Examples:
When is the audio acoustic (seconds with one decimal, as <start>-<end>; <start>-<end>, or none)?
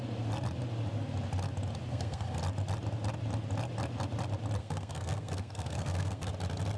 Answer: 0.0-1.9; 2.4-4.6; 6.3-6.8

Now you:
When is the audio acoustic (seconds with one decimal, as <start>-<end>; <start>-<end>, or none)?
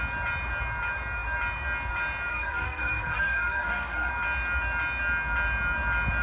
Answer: 0.0-2.3; 4.1-6.2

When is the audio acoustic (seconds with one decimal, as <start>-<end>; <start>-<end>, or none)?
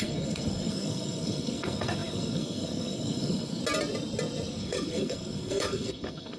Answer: 3.6-4.5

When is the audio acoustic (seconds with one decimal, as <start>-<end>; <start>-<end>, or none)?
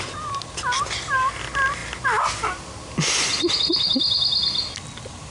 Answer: 0.0-5.3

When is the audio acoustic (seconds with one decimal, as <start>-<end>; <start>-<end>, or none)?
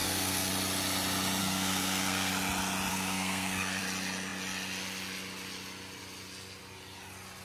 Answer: 0.5-1.4; 2.3-2.9; 3.8-7.4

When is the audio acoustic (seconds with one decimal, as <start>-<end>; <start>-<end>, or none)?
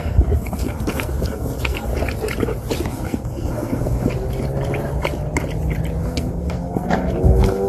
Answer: 1.9-2.9; 4.1-6.0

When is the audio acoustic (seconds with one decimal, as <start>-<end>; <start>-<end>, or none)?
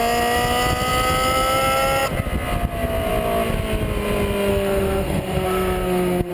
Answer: 0.0-4.5